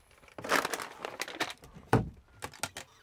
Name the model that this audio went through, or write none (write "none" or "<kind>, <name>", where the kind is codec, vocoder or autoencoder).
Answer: none